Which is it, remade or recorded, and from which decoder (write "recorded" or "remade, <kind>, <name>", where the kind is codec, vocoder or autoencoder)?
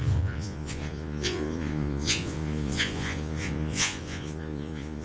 remade, vocoder, Vocos